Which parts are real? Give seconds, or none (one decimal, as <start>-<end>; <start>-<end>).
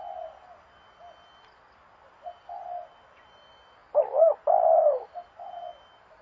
0.0-6.2